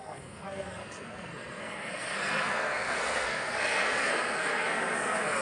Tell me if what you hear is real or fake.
fake